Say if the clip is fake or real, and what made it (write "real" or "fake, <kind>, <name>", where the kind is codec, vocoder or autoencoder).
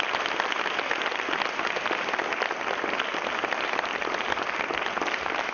real